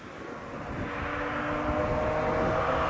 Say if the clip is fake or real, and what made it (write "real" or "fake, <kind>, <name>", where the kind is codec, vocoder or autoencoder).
real